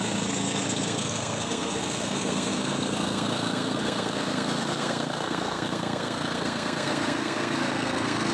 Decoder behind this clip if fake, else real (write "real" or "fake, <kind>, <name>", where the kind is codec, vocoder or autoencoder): fake, codec, SNAC